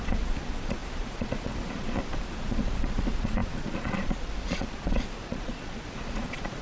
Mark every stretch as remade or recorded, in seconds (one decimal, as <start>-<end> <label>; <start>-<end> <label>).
0.0-6.6 remade